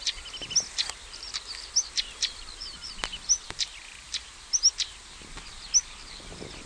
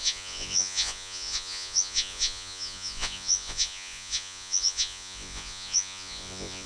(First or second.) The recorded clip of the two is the first